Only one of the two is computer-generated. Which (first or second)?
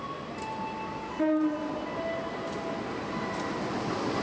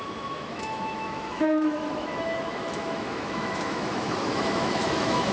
second